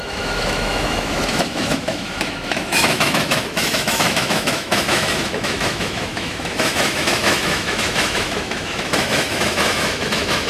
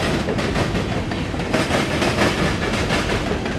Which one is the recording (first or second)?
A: second